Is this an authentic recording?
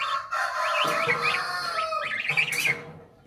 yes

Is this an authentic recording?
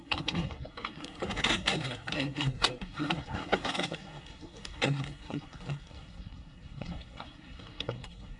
no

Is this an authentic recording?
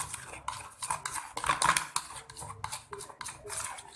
yes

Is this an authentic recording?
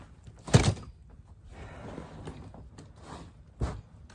yes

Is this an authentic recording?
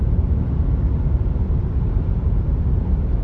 yes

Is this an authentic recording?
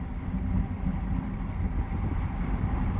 yes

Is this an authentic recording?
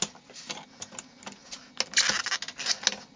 yes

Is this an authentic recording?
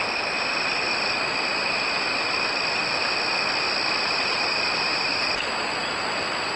yes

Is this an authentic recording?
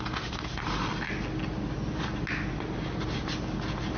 yes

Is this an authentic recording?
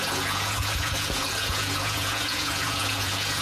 no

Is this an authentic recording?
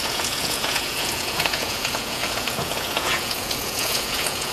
no